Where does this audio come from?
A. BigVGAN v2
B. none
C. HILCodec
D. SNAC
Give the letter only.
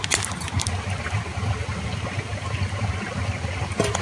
B